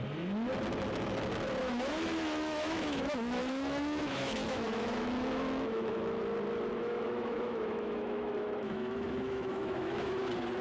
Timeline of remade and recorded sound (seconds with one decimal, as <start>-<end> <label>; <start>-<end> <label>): 0.0-1.6 recorded; 1.6-6.2 remade; 6.2-6.7 recorded; 6.7-10.2 remade; 10.2-10.6 recorded